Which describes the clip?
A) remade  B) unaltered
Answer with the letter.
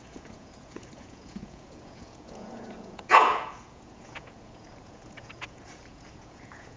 A